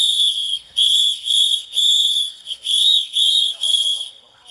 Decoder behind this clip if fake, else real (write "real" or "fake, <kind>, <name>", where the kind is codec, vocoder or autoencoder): fake, codec, SNAC